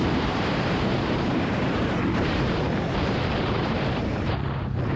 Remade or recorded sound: remade